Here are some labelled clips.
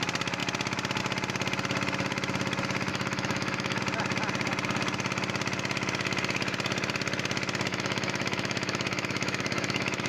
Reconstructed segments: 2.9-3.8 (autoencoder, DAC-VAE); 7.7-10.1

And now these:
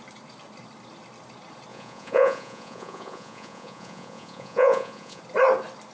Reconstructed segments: 1.7-5.2 (vocoder, Vocos)